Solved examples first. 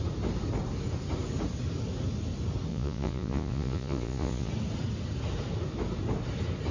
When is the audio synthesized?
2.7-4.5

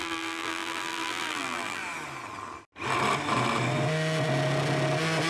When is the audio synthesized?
0.0-1.8